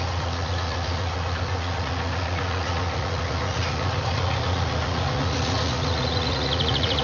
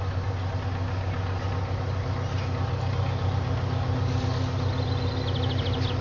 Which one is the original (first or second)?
second